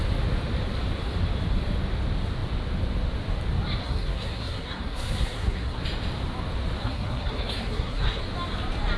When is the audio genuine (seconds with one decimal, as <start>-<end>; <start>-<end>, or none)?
0.0-3.8; 5.8-6.8; 8.2-9.0